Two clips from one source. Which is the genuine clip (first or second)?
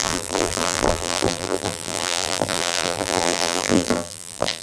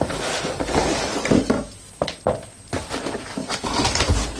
second